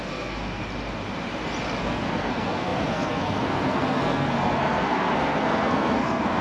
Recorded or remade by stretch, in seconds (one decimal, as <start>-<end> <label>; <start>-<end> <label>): 0.0-0.6 remade; 0.6-1.8 recorded; 1.8-6.4 remade